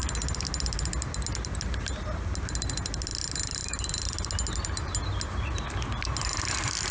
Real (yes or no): yes